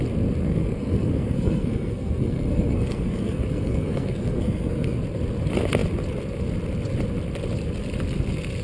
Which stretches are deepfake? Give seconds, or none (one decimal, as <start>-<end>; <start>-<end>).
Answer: 0.4-5.0